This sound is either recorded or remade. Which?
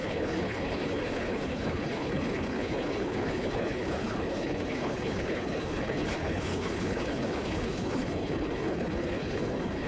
remade